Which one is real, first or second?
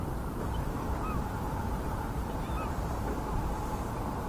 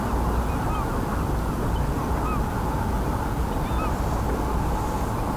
second